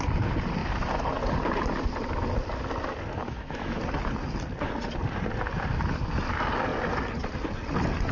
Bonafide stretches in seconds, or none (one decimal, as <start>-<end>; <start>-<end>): 0.0-3.2; 3.8-8.1